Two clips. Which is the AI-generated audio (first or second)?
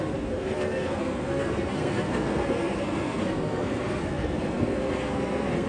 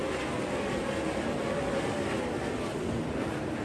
first